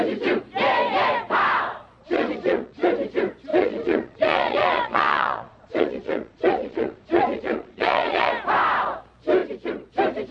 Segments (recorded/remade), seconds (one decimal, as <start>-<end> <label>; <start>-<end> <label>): 0.0-2.0 recorded; 2.0-2.9 remade; 2.9-3.5 recorded; 3.5-8.3 remade; 8.3-10.3 recorded

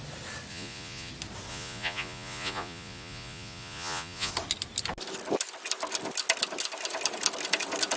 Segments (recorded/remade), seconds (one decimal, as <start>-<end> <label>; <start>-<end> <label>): 0.0-0.5 recorded; 0.5-1.1 remade; 1.1-1.5 recorded; 1.5-4.3 remade; 4.3-8.0 recorded

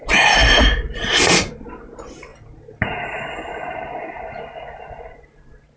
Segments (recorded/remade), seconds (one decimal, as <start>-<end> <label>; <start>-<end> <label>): 0.0-2.3 remade; 2.3-4.9 recorded; 4.9-5.8 remade

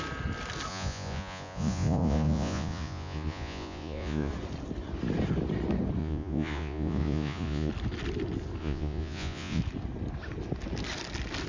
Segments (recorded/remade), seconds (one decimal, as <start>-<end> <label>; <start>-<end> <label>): 0.0-0.7 recorded; 0.7-4.3 remade; 4.3-6.0 recorded; 6.0-7.7 remade; 7.7-8.6 recorded; 8.6-9.6 remade; 9.6-11.5 recorded

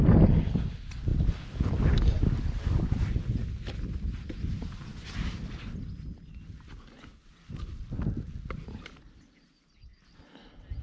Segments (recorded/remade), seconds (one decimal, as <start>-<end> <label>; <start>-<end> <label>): 0.0-10.8 recorded

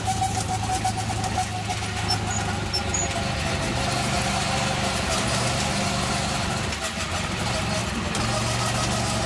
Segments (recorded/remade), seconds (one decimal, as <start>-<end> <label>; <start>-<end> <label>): 0.0-9.3 recorded

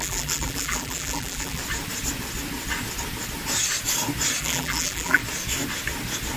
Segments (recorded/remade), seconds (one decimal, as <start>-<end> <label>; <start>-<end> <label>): 0.0-1.6 remade; 1.6-4.4 recorded; 4.4-5.2 remade; 5.2-6.4 recorded

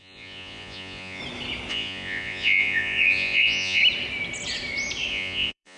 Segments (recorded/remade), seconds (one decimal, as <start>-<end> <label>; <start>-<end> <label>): 0.0-1.2 remade; 1.2-1.7 recorded; 1.7-3.8 remade; 3.8-5.1 recorded; 5.1-5.8 remade